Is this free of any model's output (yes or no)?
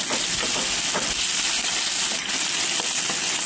yes